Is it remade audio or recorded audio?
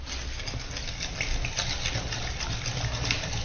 recorded